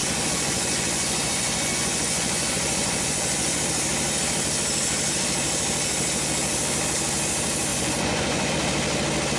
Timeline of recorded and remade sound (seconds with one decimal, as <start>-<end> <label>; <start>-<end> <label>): 0.0-3.6 remade; 3.6-7.7 recorded; 7.7-8.5 remade; 8.5-9.4 recorded